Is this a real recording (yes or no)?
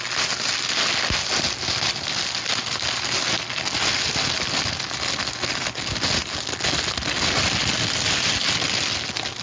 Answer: yes